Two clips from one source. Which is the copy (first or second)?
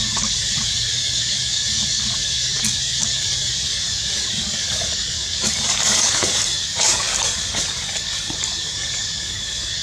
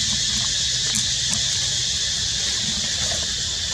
first